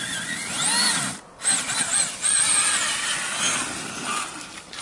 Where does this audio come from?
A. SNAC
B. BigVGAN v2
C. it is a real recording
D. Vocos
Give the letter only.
C